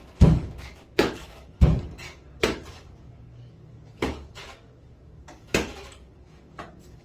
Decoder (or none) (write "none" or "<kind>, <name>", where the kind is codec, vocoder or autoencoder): codec, DAC